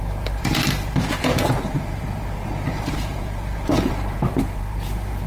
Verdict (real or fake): fake